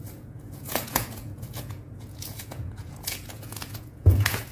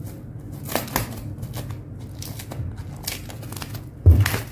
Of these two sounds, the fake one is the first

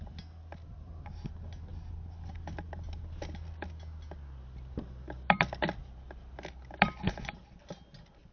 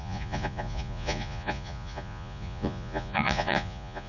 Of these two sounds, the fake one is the second